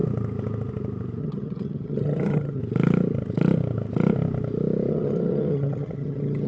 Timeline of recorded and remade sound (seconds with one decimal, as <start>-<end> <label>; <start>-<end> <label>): 0.0-1.2 recorded; 1.2-2.6 remade; 2.6-4.9 recorded; 4.9-6.5 remade